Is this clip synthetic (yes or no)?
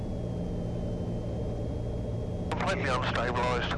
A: no